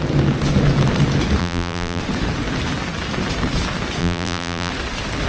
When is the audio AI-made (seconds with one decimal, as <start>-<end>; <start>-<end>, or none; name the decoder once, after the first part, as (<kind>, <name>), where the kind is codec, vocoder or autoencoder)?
1.4-2.0 (vocoder, BigVGAN v2); 4.0-4.7